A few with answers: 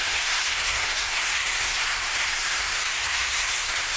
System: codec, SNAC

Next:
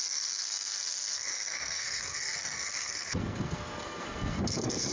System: codec, SNAC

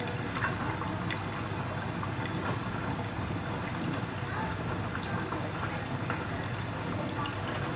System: none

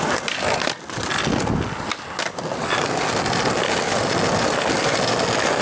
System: none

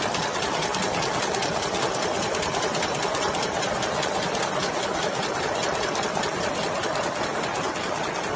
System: none